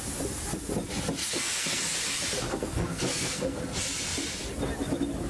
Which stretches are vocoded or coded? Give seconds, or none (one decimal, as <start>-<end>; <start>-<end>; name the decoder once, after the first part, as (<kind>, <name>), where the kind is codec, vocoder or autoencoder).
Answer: 1.2-1.8 (codec, SNAC); 2.5-3.6

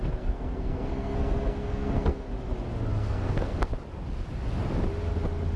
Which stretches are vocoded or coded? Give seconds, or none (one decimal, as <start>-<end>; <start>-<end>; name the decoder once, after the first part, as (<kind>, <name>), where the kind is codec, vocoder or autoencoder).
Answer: 0.0-2.3 (codec, SNAC); 2.9-3.7

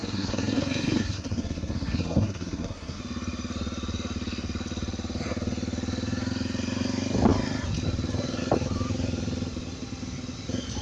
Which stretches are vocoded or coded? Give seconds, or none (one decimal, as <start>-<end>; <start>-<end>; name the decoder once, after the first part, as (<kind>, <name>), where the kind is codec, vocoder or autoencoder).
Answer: 0.0-3.0 (codec, SNAC)

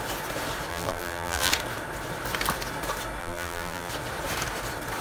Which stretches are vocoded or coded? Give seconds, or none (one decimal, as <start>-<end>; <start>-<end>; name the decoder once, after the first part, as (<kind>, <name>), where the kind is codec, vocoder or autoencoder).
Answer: 0.7-1.5 (vocoder, BigVGAN v2); 3.2-3.9

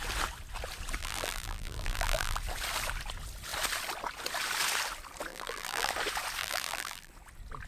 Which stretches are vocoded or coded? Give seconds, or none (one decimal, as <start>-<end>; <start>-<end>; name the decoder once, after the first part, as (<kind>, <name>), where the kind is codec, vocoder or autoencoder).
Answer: 1.0-2.4 (vocoder, BigVGAN v2); 5.3-5.9; 6.4-7.1